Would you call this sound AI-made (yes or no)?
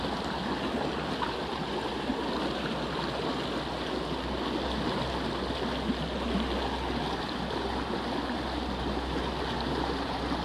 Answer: no